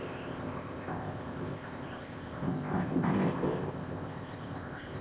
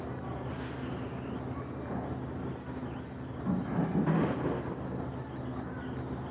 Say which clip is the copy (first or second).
first